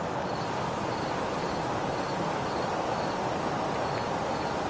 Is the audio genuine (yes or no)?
yes